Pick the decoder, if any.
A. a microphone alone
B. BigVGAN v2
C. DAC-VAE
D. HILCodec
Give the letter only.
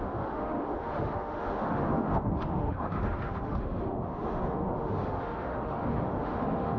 C